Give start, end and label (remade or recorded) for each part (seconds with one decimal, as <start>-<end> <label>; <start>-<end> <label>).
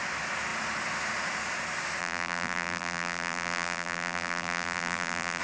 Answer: 0.0-2.0 recorded; 2.0-5.4 remade